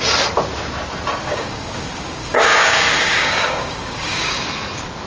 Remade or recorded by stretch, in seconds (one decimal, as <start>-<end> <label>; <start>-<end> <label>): 0.0-1.2 recorded; 1.2-4.3 remade; 4.3-5.1 recorded